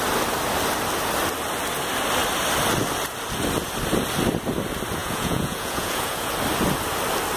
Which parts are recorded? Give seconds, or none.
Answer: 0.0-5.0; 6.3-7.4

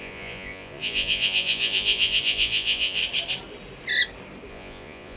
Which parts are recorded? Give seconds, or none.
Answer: 3.0-4.5

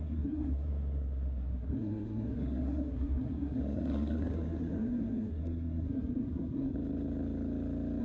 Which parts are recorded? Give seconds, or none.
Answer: 6.7-8.0

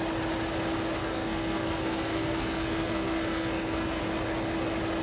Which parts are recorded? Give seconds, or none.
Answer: 0.0-1.0; 4.0-5.0

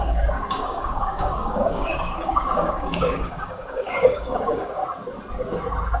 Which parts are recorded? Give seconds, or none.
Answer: 4.8-6.0